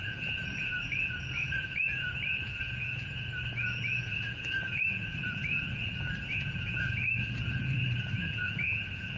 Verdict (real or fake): fake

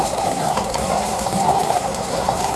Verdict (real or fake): fake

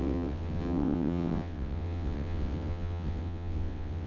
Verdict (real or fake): fake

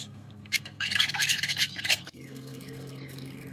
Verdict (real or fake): fake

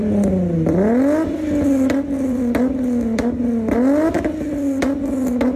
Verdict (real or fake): real